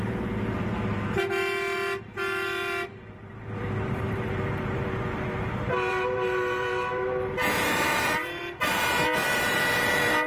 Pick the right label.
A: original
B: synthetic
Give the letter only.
B